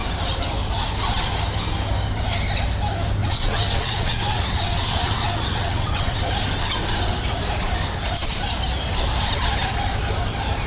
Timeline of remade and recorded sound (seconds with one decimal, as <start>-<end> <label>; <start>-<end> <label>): 0.0-3.2 recorded; 3.2-6.2 remade; 6.2-10.7 recorded